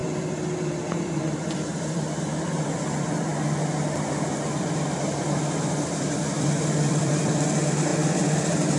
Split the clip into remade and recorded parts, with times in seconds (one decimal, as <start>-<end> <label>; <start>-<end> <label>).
0.0-3.3 remade; 3.3-4.6 recorded; 4.6-8.8 remade